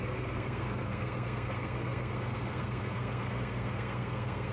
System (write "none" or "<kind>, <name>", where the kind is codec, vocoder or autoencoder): codec, SNAC